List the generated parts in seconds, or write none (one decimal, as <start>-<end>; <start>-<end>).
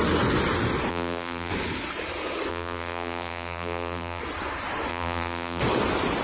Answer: 0.9-1.5; 2.5-4.2; 4.9-5.6